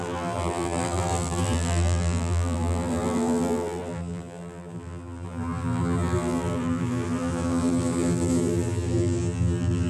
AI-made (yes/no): yes